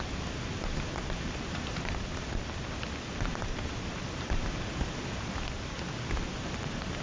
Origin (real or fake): real